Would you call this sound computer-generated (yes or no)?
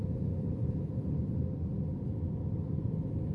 no